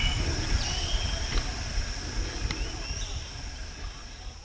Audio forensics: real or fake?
real